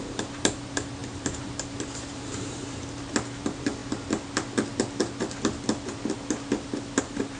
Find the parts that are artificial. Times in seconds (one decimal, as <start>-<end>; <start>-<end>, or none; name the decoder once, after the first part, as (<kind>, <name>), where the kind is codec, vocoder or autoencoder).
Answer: 0.0-3.8 (vocoder, BigVGAN v2); 7.0-7.4